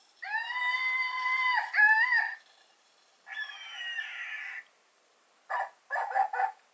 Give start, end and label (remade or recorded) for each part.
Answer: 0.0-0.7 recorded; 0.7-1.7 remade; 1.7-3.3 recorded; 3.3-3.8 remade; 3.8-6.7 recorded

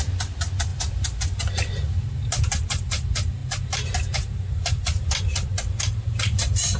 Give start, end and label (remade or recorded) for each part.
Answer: 0.0-6.8 recorded

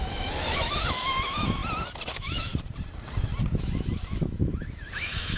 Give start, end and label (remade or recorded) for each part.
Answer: 0.0-1.6 remade; 1.6-2.1 recorded; 2.1-2.5 remade; 2.5-3.6 recorded; 3.6-5.4 remade

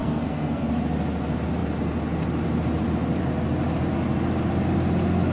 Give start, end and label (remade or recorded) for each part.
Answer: 0.0-0.7 remade; 0.7-5.3 recorded

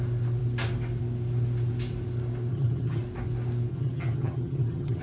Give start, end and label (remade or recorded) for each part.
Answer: 0.0-2.5 recorded; 2.5-3.0 remade; 3.0-3.7 recorded; 3.7-5.0 remade